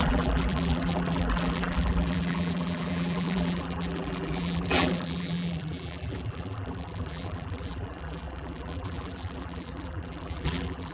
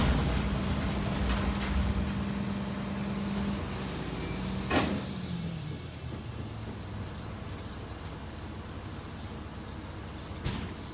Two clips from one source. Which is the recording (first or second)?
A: second